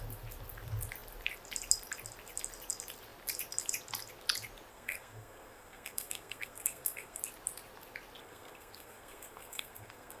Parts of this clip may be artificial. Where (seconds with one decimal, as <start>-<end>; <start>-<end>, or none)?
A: 4.7-7.2; 8.2-10.2